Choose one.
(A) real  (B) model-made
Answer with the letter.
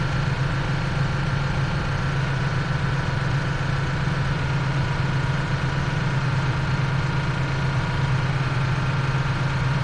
A